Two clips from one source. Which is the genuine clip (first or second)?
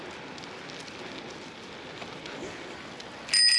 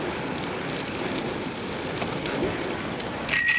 first